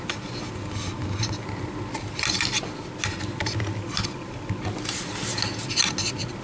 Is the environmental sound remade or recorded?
recorded